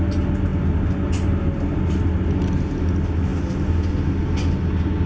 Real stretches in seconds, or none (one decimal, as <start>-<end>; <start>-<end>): 0.0-5.1